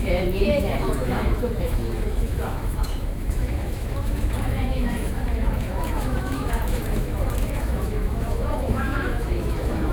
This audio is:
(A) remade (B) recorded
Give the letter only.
A